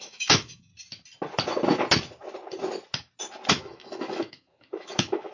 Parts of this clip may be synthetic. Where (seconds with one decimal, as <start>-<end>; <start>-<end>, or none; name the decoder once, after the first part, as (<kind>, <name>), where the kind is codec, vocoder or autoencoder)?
0.0-0.7 (autoencoder, DAC-VAE); 3.5-5.3